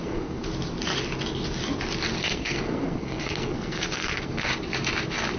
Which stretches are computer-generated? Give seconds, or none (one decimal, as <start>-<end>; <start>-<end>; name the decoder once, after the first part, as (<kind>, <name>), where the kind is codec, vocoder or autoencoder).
0.0-0.5 (codec, SNAC); 2.3-4.5